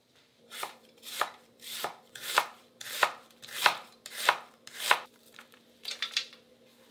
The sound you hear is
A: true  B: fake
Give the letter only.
B